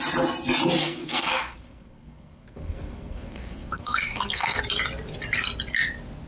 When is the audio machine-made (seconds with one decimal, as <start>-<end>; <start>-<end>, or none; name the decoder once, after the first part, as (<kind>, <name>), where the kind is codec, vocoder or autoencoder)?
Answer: 0.8-4.6 (codec, SNAC)